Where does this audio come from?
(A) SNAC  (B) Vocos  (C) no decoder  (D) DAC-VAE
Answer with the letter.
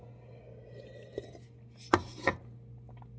C